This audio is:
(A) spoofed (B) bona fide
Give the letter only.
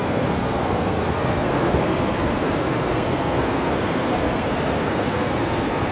A